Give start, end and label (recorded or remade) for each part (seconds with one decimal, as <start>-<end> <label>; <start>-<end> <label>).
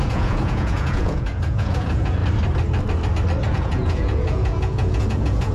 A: 0.0-2.2 remade; 2.2-3.5 recorded; 3.5-5.5 remade